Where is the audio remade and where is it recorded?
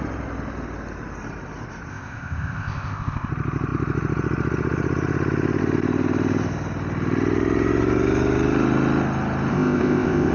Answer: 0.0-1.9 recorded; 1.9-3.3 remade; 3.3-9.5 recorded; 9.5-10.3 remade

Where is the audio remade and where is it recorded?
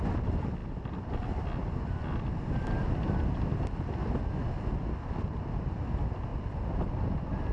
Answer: 0.0-7.5 recorded